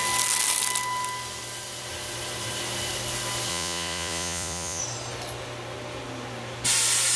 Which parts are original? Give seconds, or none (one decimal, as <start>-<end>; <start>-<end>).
0.0-3.5; 4.8-7.2